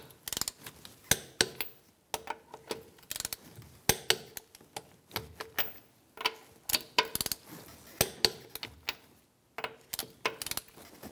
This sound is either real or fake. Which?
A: real